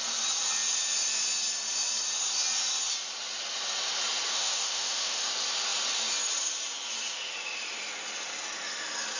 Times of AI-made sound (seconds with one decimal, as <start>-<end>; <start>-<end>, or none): 4.3-5.3